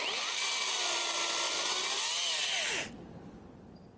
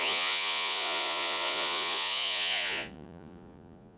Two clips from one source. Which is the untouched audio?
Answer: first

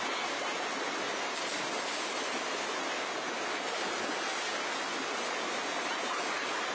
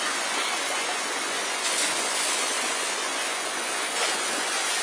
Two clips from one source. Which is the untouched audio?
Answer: first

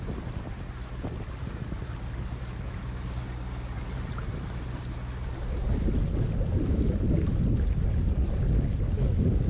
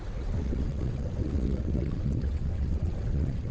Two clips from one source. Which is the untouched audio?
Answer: first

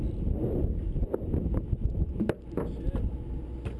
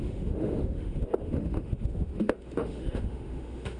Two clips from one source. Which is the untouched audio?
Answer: first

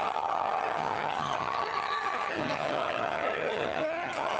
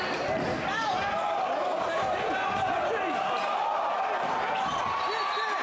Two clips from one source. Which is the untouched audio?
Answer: second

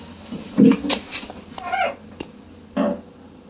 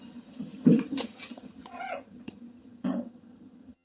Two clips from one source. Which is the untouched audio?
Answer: first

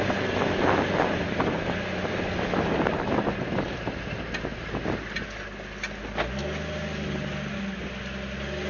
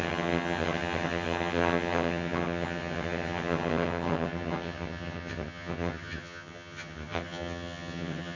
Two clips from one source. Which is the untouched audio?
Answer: first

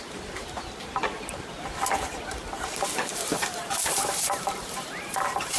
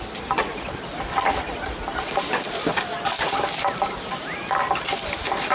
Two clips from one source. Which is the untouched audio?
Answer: second